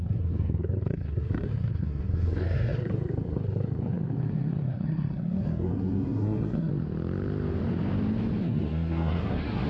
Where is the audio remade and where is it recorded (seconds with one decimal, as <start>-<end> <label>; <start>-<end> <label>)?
0.0-6.7 remade; 6.7-8.4 recorded; 8.4-9.7 remade